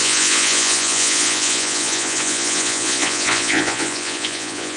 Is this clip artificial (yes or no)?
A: yes